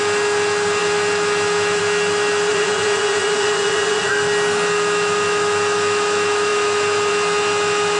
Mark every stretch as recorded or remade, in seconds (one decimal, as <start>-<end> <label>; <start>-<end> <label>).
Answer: 0.0-2.5 recorded; 2.5-4.1 remade; 4.1-8.0 recorded